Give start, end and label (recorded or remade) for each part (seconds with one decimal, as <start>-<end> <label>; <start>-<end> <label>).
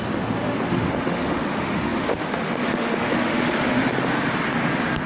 0.0-0.7 recorded; 0.7-3.8 remade; 3.8-5.1 recorded